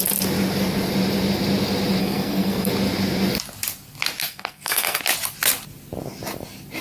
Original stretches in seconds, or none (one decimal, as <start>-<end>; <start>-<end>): 0.0-2.0; 2.7-4.2; 5.0-6.8